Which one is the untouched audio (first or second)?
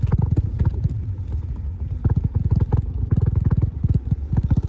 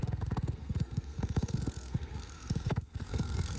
first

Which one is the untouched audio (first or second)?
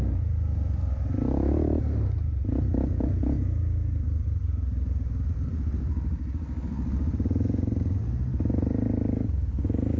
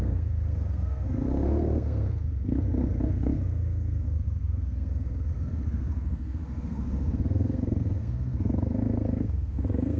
first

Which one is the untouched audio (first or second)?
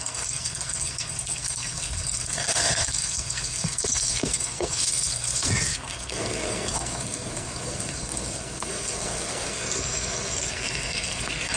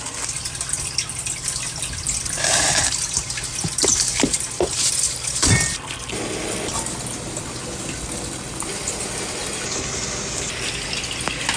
second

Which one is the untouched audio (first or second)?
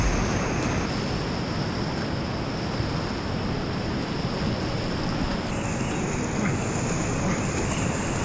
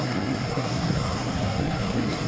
first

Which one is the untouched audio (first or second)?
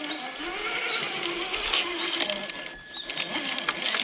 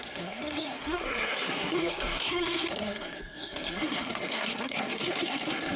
first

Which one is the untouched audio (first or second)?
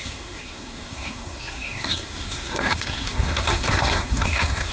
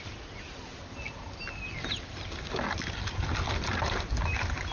second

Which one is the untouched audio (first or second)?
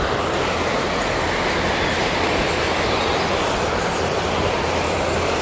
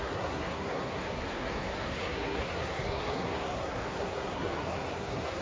first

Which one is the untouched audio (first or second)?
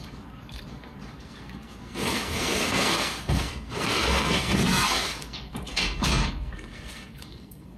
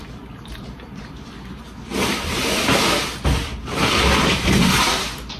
second